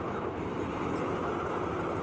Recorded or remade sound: recorded